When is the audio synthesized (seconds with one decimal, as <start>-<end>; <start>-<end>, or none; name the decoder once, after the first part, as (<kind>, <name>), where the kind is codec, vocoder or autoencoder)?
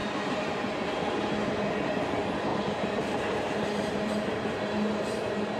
2.5-4.6 (vocoder, BigVGAN v2)